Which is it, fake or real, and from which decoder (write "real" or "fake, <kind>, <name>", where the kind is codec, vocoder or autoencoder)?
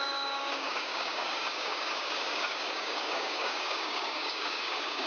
fake, codec, DAC